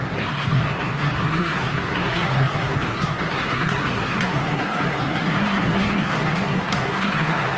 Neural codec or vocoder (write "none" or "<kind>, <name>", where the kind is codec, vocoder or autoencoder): codec, SNAC